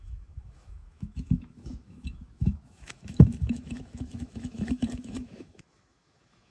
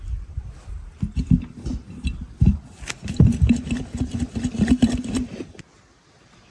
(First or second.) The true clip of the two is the second